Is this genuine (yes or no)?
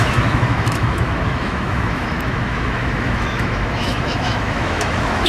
no